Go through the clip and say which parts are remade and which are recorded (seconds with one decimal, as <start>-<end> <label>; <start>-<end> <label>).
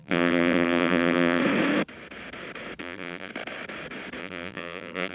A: 0.0-1.4 remade; 1.4-2.8 recorded; 2.8-3.3 remade; 3.3-4.2 recorded; 4.2-5.1 remade